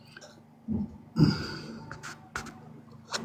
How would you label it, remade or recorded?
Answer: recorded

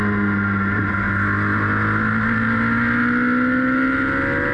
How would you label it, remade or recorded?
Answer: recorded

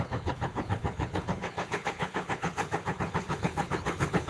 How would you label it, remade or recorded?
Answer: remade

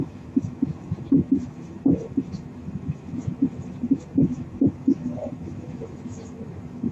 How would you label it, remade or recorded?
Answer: remade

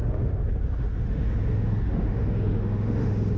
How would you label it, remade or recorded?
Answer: remade